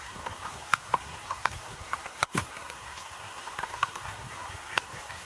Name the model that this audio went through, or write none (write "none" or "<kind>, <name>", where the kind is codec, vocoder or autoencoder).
codec, SNAC